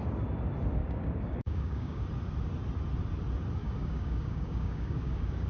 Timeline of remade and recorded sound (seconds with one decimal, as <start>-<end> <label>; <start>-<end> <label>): 0.0-0.8 recorded; 0.8-2.0 remade; 2.0-3.6 recorded; 3.6-5.5 remade